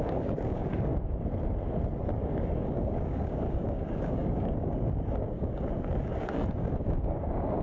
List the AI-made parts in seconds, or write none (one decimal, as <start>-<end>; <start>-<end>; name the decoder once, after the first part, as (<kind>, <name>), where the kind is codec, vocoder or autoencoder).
0.0-0.9 (codec, DAC); 2.1-7.6